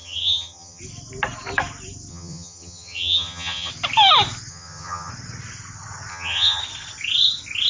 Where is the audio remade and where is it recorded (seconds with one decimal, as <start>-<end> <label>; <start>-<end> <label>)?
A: 0.0-0.8 remade; 0.8-2.1 recorded; 2.1-3.7 remade; 3.7-4.5 recorded; 4.5-5.1 remade; 5.1-6.1 recorded; 6.1-6.6 remade; 6.6-7.7 recorded